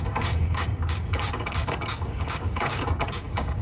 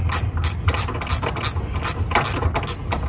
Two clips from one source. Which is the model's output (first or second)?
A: first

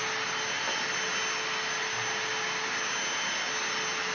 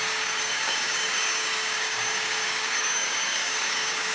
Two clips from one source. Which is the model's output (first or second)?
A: second